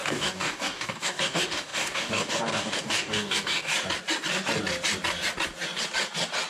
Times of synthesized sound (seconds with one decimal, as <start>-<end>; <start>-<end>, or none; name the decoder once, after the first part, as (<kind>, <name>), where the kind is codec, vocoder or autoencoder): 0.0-3.7 (codec, DAC)